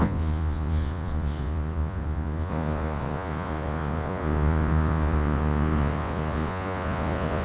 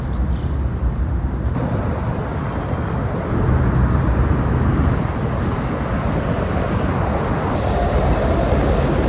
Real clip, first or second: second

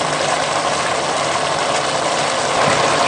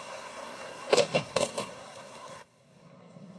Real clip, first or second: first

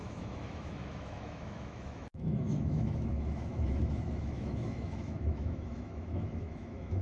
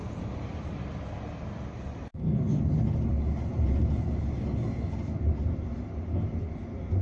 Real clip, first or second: second